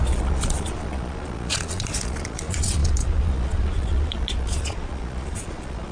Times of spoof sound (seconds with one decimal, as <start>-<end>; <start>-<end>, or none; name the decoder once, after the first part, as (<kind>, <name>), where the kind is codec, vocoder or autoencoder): 0.0-5.9 (vocoder, Vocos)